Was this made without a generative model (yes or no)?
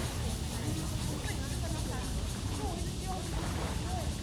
yes